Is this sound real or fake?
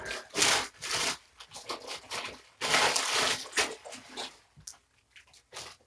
real